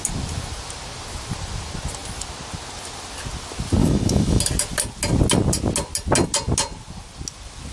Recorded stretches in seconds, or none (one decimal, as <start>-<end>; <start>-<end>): 0.0-3.8; 4.4-7.7